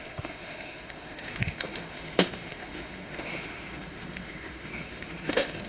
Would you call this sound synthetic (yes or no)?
yes